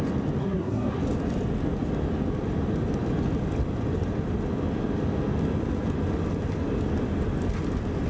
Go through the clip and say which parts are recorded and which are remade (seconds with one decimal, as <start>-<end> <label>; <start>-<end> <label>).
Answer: 0.0-0.4 recorded; 0.4-1.0 remade; 1.0-8.1 recorded